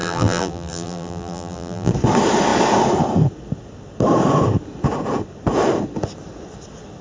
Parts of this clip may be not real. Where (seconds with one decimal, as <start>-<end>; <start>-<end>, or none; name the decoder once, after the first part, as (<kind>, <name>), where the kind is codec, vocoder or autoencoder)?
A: 0.0-1.9 (vocoder, BigVGAN v2)